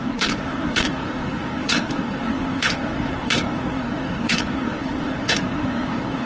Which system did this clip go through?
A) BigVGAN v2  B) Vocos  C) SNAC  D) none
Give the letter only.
C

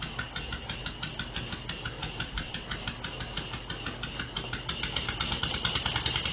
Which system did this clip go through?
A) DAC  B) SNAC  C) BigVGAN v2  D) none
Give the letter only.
D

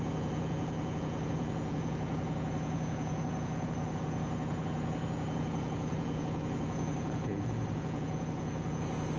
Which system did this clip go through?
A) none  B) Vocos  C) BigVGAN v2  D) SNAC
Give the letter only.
B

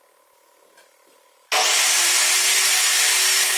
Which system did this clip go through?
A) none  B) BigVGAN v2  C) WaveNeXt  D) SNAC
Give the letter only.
A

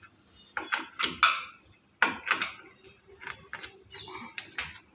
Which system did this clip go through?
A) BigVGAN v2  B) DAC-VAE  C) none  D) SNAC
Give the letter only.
C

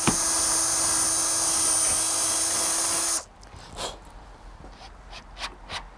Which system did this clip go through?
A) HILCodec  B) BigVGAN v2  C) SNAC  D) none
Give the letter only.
D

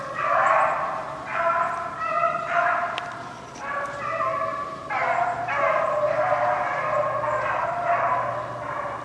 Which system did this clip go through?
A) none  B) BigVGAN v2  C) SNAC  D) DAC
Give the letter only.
A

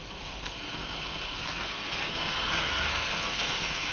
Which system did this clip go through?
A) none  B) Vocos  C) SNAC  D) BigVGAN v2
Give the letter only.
C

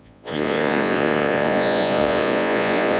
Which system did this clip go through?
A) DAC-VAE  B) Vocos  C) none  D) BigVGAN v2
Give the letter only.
B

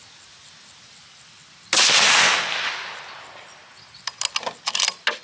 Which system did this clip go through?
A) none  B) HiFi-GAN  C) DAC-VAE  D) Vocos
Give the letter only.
A